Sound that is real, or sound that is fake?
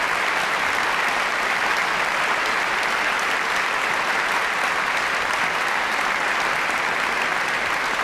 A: real